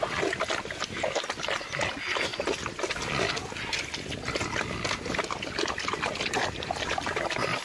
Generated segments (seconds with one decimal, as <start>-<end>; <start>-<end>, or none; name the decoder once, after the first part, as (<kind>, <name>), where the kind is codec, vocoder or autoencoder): none